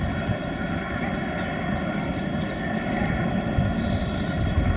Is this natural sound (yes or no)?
yes